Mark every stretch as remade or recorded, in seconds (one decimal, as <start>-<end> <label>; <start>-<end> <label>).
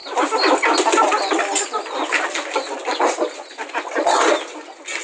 0.0-5.0 recorded